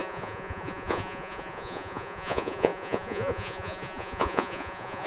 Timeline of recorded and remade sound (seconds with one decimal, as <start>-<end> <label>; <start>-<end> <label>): 0.0-5.1 remade